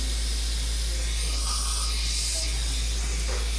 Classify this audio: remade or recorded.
recorded